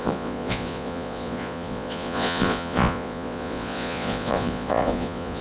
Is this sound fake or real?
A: fake